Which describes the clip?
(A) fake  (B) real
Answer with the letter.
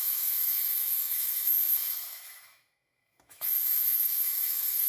A